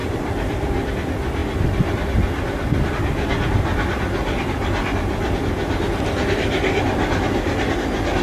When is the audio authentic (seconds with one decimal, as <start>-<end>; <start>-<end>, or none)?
0.9-1.4; 2.9-8.2